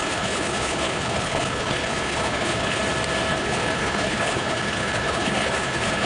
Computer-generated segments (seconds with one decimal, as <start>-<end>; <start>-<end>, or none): 0.0-2.8; 3.3-6.1